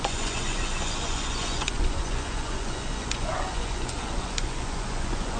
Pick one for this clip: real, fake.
fake